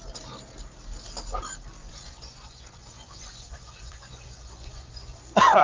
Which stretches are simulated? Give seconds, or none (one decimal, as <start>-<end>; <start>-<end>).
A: 1.8-5.6